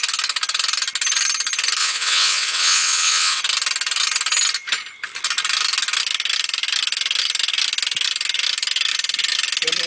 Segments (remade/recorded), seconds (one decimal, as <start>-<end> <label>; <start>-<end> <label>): 0.0-1.8 recorded; 1.8-3.4 remade; 3.4-9.9 recorded